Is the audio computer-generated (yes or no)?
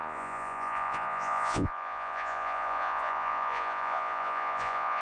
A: yes